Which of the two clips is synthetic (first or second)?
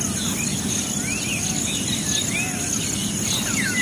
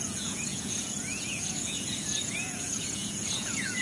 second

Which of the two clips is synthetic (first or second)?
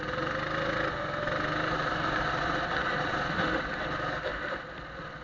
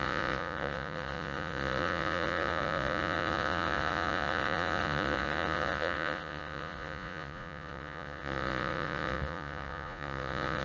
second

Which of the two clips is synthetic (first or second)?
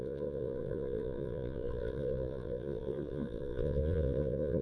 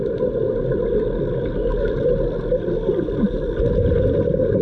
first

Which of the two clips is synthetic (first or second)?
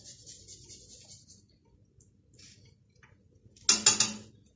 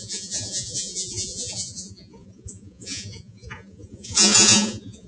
second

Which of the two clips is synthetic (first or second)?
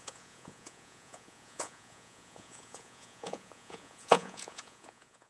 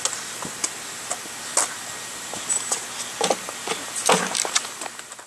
first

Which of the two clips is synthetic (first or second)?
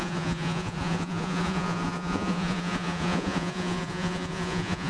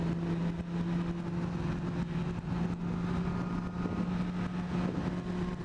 first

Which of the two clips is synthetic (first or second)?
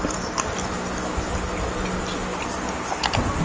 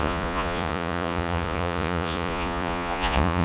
second